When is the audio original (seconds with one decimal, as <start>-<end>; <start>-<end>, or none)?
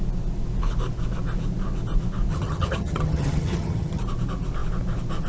0.0-2.3; 4.0-5.3